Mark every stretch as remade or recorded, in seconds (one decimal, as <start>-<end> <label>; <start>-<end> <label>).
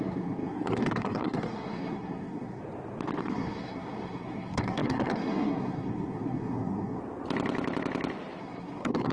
0.0-2.6 remade; 2.6-3.2 recorded; 3.2-7.0 remade; 7.0-8.4 recorded; 8.4-9.1 remade